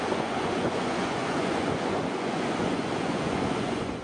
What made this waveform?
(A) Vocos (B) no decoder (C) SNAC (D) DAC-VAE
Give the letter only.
A